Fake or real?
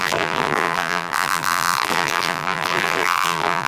fake